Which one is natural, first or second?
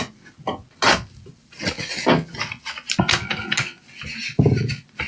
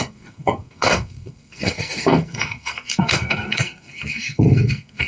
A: first